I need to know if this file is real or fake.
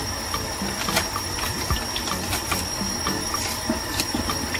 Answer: fake